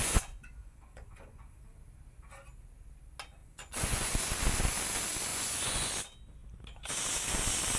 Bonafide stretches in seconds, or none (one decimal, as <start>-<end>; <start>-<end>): 1.5-3.4; 4.3-5.3; 5.9-7.8